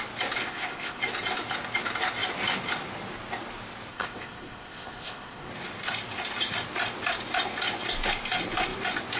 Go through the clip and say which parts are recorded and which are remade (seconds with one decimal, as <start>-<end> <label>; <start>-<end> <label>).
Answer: 0.0-0.4 recorded; 0.4-1.0 remade; 1.0-3.9 recorded; 3.9-5.5 remade; 5.5-9.2 recorded